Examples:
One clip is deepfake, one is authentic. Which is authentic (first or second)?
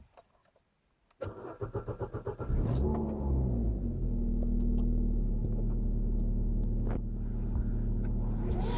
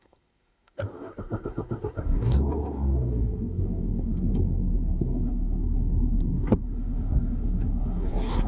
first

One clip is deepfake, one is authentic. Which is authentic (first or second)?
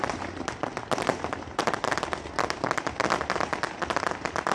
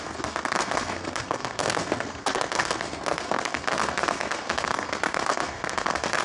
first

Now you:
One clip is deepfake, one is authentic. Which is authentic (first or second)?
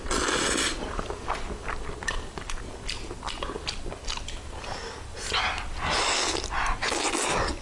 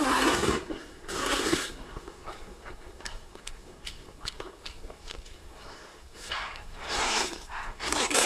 first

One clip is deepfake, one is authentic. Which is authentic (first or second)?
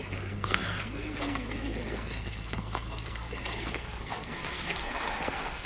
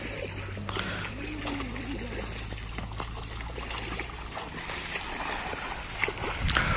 second